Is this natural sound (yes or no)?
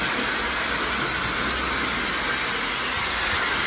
yes